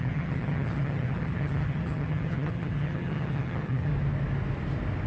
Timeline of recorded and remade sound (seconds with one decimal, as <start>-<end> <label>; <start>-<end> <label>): 0.0-3.9 remade; 3.9-5.1 recorded